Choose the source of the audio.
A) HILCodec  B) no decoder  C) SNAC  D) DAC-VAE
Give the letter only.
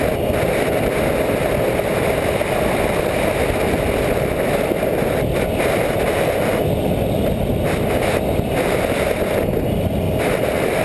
B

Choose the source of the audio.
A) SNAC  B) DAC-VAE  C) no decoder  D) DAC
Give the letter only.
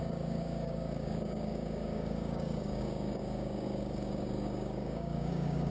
D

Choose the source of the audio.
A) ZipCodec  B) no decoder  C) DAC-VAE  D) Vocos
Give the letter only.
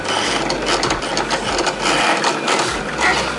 B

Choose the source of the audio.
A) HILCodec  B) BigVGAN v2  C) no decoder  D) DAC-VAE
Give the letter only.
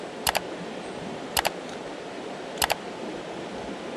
C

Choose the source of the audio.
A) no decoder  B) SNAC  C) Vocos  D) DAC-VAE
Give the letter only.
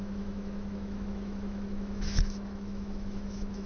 D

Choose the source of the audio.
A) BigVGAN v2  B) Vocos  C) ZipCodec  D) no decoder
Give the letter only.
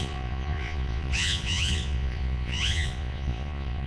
B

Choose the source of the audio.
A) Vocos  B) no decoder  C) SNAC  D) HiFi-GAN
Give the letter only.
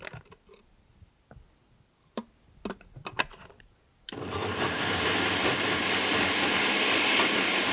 B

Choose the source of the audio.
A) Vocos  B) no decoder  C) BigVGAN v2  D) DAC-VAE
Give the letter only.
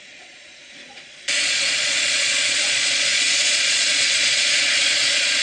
A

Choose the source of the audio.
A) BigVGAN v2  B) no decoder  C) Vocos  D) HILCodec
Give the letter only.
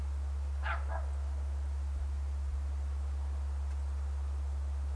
B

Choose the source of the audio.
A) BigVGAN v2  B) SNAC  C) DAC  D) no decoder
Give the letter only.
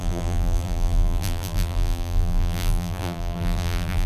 A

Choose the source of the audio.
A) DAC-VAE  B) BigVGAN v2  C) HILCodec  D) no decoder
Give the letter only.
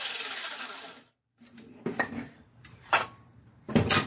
B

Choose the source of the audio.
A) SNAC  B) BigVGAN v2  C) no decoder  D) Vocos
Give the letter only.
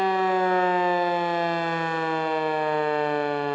C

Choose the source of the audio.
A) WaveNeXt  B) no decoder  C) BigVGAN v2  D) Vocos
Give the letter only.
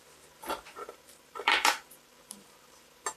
C